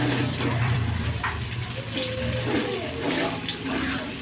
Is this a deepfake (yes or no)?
yes